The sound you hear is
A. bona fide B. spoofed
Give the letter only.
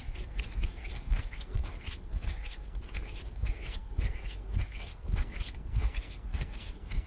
B